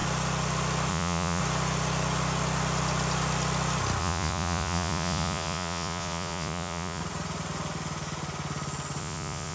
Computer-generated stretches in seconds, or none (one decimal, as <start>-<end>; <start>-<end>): 0.9-1.4; 4.0-7.0; 9.0-9.5